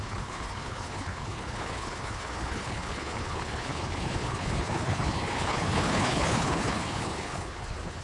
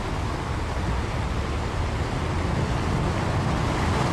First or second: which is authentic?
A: second